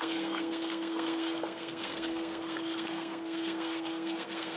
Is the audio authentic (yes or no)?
no